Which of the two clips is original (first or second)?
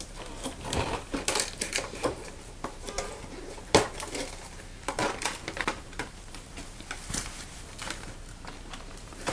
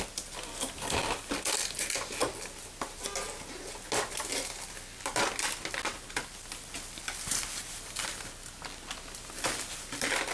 second